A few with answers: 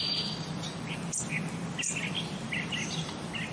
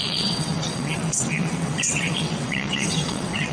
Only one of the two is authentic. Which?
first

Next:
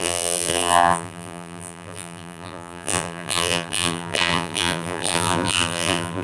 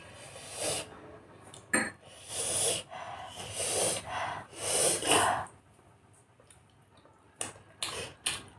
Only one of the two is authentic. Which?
second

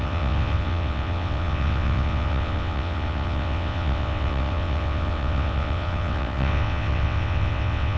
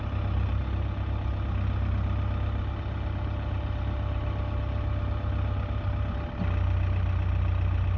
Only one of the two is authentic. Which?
second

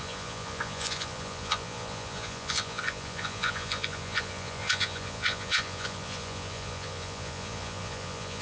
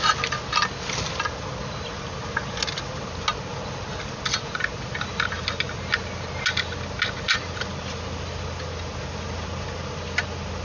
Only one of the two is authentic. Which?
second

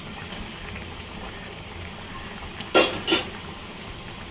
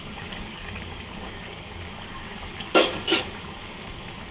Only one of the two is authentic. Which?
first